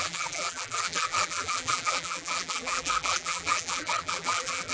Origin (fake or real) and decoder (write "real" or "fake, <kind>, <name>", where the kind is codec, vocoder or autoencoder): fake, vocoder, BigVGAN v2